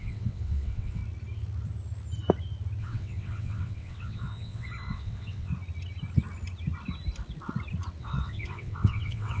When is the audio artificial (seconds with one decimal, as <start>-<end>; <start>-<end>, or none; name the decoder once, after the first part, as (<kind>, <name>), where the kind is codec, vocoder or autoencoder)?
0.0-1.0 (vocoder, WaveNeXt); 2.8-5.5; 8.0-9.4